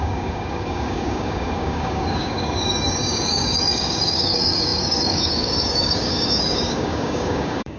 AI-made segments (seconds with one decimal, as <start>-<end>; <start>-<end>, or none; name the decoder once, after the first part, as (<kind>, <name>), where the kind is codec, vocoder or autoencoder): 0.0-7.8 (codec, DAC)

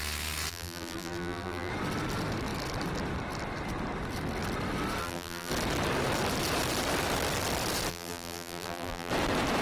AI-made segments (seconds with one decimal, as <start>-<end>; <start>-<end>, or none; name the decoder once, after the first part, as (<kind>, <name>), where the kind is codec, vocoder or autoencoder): 0.5-1.7 (vocoder, BigVGAN v2); 5.0-5.5; 7.9-9.1

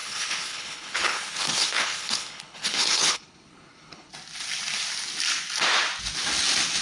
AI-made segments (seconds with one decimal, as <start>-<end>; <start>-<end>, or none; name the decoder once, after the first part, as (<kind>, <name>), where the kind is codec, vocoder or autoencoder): 0.0-4.1 (codec, HILCodec)

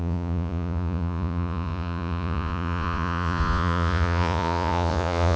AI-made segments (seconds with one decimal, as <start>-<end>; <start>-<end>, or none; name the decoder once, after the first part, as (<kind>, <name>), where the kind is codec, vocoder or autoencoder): 0.0-5.4 (vocoder, Vocos)

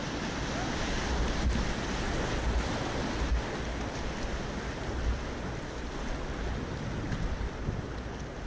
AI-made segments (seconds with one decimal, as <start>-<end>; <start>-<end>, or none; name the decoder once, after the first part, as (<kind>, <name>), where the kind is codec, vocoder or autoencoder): none

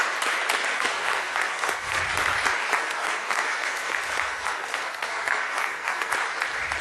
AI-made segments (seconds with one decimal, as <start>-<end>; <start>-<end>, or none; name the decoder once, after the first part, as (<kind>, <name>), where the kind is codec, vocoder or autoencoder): 0.7-2.0 (codec, SNAC); 2.8-6.1

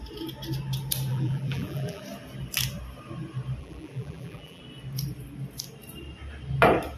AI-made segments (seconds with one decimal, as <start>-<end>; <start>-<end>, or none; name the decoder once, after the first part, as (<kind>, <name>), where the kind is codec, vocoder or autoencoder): 1.1-2.0 (vocoder, BigVGAN v2); 3.6-4.6

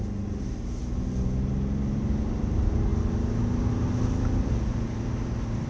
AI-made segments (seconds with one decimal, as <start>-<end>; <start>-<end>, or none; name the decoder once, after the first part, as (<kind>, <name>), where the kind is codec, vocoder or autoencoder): none